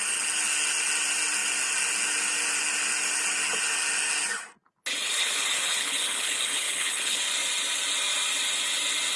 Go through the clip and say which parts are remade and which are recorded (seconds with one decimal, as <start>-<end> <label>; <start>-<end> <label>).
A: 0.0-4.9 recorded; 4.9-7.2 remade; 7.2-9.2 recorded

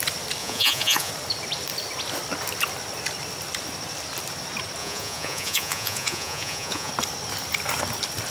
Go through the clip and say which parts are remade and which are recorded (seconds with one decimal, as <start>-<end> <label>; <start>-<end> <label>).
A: 0.0-0.4 recorded; 0.4-1.1 remade; 1.1-4.8 recorded; 4.8-6.9 remade; 6.9-8.3 recorded

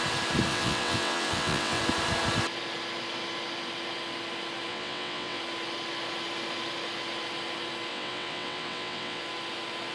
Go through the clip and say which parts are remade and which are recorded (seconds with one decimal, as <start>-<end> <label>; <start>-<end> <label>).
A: 0.0-0.5 recorded; 0.5-1.8 remade; 1.8-4.7 recorded; 4.7-5.4 remade; 5.4-7.9 recorded; 7.9-9.2 remade; 9.2-9.9 recorded